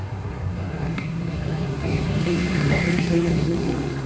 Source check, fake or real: fake